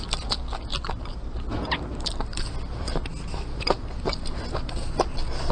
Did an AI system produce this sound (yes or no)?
no